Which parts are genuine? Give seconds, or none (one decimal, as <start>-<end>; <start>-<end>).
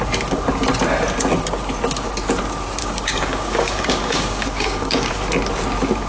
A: 0.0-2.8; 5.1-6.1